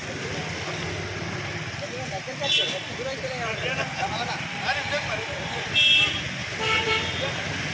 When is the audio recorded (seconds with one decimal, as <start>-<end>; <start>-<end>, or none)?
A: 0.0-7.7